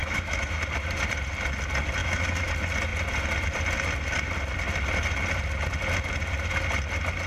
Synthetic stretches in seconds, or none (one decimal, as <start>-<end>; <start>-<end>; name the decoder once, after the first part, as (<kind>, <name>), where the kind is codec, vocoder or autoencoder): 0.0-0.6 (autoencoder, DAC-VAE); 2.0-2.5